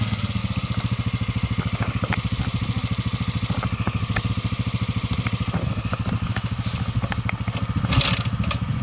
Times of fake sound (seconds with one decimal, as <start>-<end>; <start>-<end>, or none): none